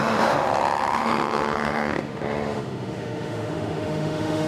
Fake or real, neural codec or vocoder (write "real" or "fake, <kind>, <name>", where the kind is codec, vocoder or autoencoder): fake, autoencoder, DAC-VAE